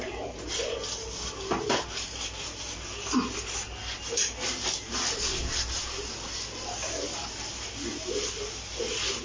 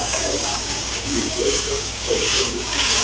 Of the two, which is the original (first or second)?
first